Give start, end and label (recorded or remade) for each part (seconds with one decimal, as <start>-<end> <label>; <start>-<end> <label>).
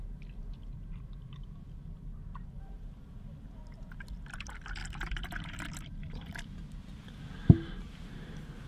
0.0-0.7 recorded; 0.7-2.6 remade; 2.6-4.8 recorded; 4.8-6.4 remade; 6.4-8.7 recorded